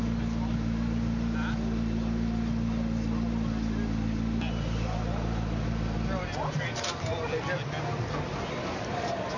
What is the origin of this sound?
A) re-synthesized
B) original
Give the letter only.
B